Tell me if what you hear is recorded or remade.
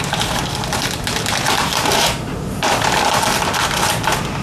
remade